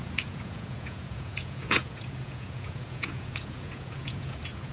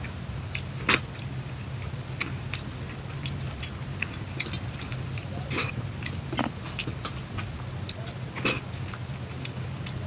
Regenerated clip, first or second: first